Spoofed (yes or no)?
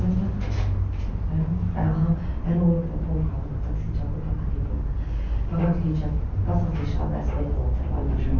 no